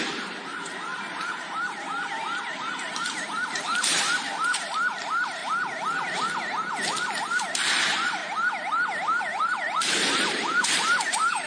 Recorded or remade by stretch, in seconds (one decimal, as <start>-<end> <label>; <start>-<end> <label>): 0.0-5.4 remade; 5.4-7.2 recorded; 7.2-8.2 remade; 8.2-9.2 recorded; 9.2-11.5 remade